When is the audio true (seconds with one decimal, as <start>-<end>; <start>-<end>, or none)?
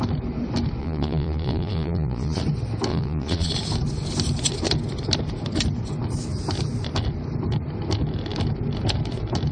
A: 0.0-0.8; 2.4-2.9; 3.5-9.5